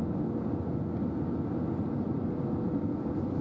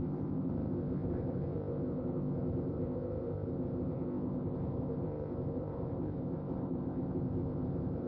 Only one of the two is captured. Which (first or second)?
first